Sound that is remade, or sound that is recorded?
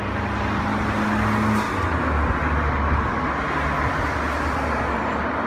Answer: recorded